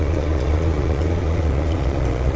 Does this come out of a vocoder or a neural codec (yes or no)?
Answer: yes